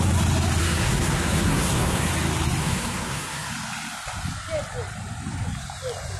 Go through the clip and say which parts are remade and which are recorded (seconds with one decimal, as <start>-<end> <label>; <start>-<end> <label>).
0.0-0.6 recorded; 0.6-2.1 remade; 2.1-2.6 recorded; 2.6-3.5 remade; 3.5-6.2 recorded